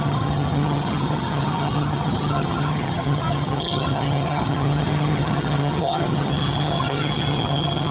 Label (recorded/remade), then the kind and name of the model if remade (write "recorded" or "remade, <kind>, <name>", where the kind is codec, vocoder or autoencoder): remade, vocoder, HiFi-GAN